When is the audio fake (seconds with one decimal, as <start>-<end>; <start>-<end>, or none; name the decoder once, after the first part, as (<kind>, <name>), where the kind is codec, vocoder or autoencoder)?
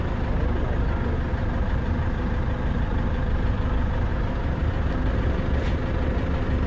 1.3-3.5 (vocoder, BigVGAN v2); 4.1-4.7